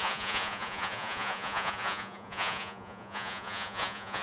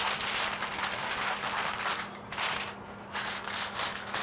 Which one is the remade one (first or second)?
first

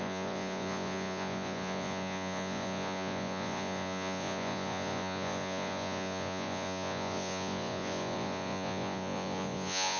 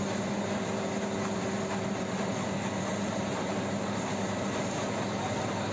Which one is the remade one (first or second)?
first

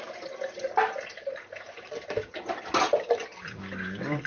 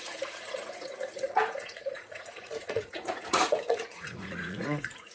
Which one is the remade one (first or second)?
second